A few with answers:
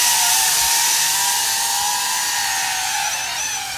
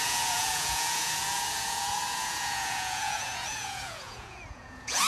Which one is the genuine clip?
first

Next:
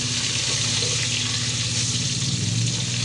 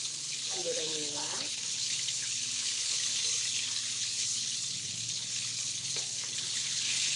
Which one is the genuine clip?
first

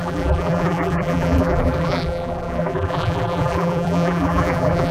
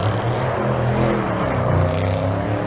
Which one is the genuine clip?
second